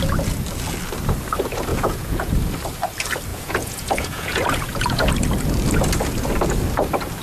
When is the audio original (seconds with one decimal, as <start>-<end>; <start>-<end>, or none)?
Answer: 0.0-1.7; 2.3-3.3; 5.1-7.2